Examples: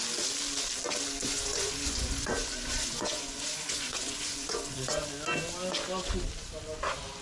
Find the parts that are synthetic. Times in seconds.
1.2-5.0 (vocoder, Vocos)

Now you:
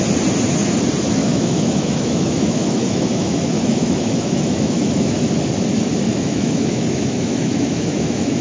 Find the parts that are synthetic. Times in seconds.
1.2-5.3 (autoencoder, DAC-VAE); 6.1-8.4

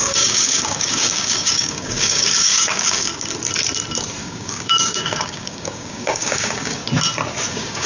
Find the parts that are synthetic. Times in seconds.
0.0-3.1 (codec, DAC); 4.2-6.8; 7.5-7.9

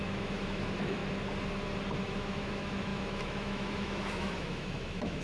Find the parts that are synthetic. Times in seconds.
0.0-1.0 (autoencoder, DAC-VAE); 2.1-5.2